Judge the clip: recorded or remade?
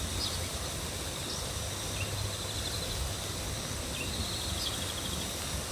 recorded